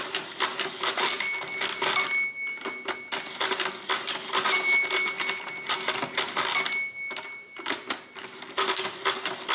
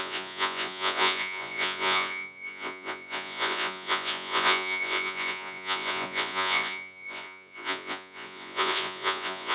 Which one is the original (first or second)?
first